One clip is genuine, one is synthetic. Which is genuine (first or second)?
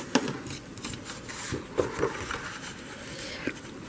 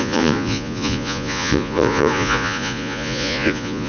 first